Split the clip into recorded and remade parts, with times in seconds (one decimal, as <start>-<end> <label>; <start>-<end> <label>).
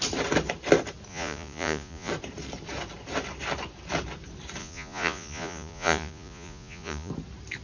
0.0-1.1 recorded; 1.1-2.1 remade; 2.1-4.6 recorded; 4.6-7.1 remade; 7.1-7.6 recorded